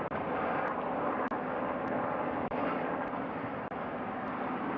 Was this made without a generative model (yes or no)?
yes